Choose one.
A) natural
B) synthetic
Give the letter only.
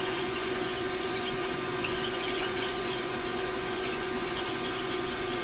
B